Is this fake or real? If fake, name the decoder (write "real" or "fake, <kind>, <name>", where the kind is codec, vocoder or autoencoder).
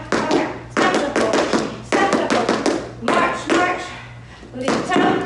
real